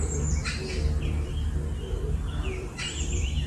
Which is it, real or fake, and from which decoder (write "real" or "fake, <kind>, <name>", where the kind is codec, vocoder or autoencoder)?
fake, vocoder, BigVGAN v2